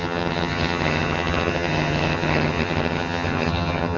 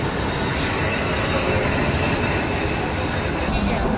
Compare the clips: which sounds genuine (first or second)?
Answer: second